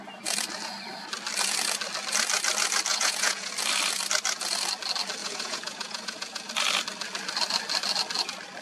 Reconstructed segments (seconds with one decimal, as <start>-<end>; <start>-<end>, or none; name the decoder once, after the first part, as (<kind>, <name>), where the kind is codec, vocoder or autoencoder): 2.9-3.5 (vocoder, Vocos); 5.2-6.5